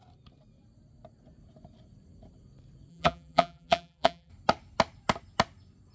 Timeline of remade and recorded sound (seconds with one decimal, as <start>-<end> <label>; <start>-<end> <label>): 0.0-2.9 recorded; 2.9-4.3 remade; 4.3-5.9 recorded